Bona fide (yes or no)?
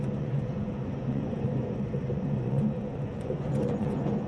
no